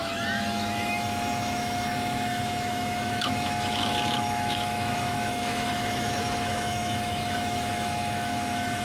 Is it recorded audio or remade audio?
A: remade